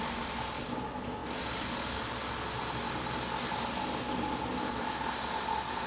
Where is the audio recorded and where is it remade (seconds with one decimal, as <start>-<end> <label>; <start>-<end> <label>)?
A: 0.0-5.9 recorded